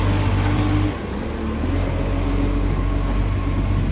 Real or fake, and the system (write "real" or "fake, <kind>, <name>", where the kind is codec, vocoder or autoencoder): real